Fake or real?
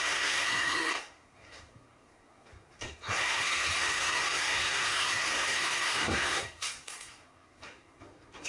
fake